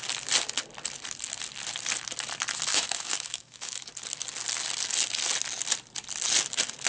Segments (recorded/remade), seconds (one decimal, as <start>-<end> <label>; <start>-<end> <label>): 0.0-2.7 recorded; 2.7-3.8 remade; 3.8-6.9 recorded